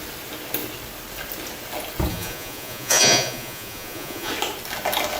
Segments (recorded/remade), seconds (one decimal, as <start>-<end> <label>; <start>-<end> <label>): 0.0-2.1 recorded; 2.1-4.3 remade; 4.3-5.2 recorded